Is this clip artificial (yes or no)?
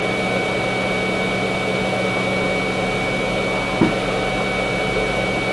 no